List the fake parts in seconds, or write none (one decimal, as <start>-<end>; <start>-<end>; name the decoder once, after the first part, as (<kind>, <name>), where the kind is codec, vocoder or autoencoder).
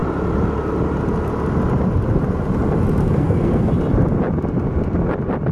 3.0-3.7 (codec, SNAC)